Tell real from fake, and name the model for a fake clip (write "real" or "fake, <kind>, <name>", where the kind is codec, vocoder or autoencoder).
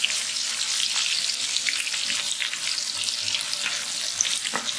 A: real